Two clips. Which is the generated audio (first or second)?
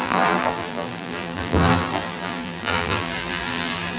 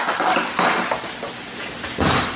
first